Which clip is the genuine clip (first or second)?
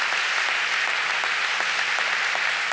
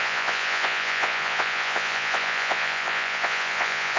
first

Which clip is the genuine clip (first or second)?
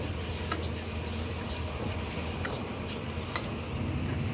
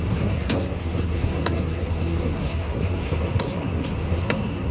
first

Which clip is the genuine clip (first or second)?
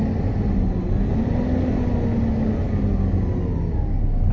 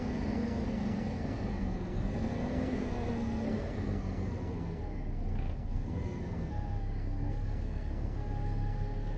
first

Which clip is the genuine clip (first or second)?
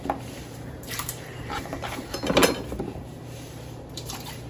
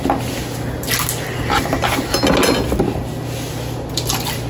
second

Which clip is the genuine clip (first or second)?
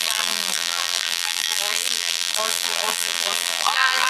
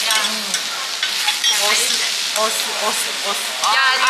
second